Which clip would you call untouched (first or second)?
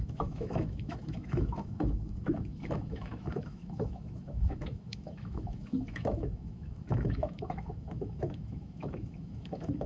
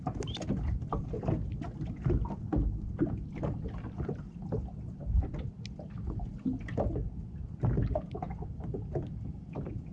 second